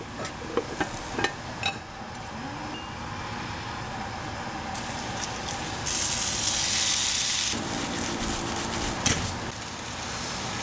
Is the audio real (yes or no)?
yes